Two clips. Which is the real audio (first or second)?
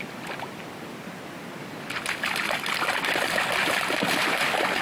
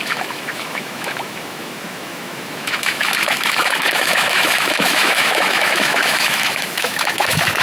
first